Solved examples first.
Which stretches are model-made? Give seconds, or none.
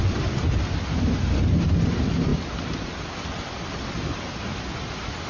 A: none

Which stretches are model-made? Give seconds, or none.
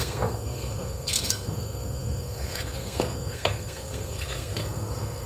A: 0.0-5.3 (codec, SNAC)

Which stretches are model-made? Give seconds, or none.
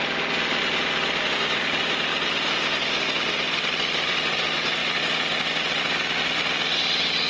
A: 0.0-4.8 (vocoder, BigVGAN v2)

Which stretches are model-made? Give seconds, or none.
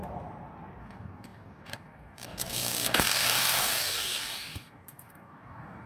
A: 0.8-5.9 (codec, DAC)